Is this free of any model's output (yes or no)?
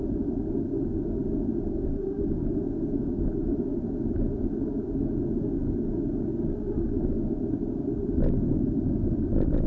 yes